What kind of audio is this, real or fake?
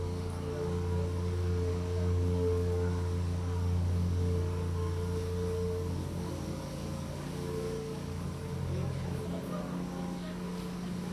fake